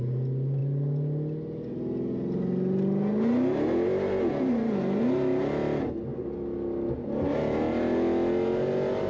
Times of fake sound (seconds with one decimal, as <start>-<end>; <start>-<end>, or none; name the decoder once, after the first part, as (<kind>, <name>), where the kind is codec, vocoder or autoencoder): none